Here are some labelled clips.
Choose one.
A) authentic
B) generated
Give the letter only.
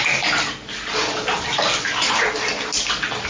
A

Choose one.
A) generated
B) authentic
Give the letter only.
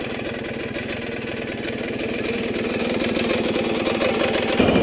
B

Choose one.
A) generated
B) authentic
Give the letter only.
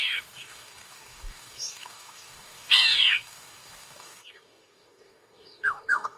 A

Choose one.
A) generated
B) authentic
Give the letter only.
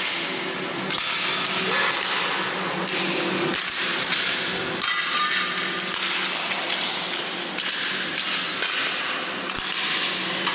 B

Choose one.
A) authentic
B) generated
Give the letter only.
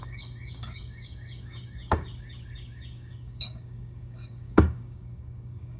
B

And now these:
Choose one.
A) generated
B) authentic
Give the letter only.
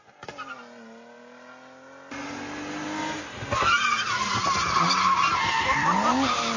B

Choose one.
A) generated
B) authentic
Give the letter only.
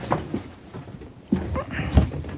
B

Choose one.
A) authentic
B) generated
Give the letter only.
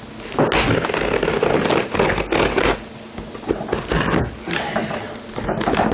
A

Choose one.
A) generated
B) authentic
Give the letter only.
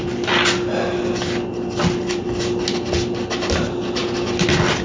B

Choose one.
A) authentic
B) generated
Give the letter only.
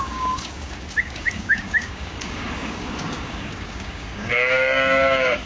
B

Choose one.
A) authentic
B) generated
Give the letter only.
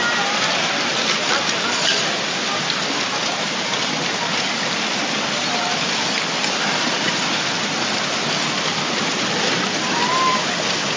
A